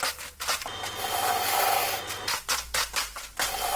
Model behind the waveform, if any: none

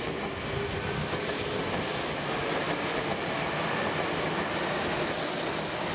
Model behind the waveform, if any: none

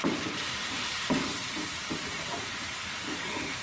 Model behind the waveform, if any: vocoder, BigVGAN v2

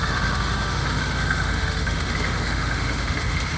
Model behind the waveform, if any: autoencoder, DAC-VAE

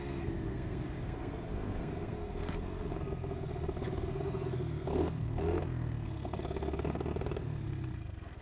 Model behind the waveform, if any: codec, SNAC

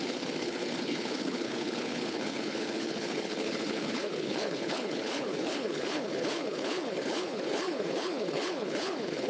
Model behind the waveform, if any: codec, HILCodec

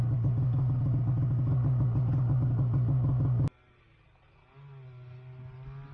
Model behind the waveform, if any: none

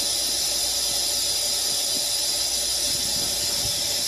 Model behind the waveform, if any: none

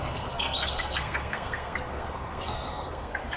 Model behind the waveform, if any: codec, SNAC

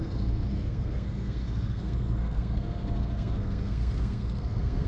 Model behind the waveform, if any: codec, SNAC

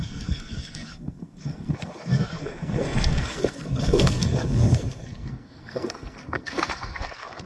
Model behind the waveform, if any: codec, SNAC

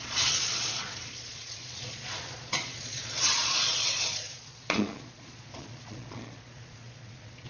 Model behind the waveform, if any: vocoder, Vocos